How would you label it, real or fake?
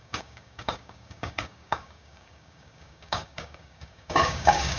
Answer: fake